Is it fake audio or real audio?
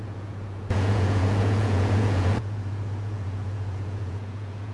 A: fake